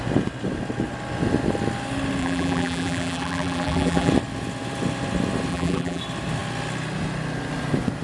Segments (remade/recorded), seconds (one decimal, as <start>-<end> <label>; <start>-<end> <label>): 0.0-2.2 recorded; 2.2-4.1 remade; 4.1-5.5 recorded; 5.5-6.0 remade; 6.0-8.0 recorded